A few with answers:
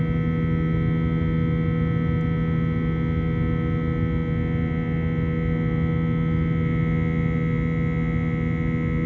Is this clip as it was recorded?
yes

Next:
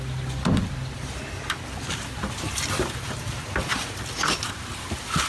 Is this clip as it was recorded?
yes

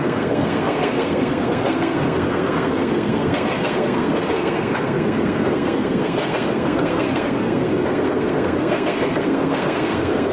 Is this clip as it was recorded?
no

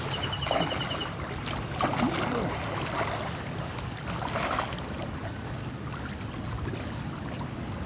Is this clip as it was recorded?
yes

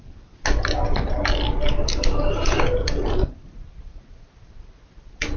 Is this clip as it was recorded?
yes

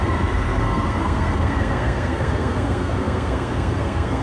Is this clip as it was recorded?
no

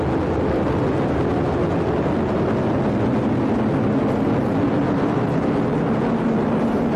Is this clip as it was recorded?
yes